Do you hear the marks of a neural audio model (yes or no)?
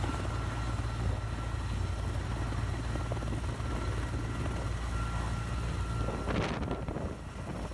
no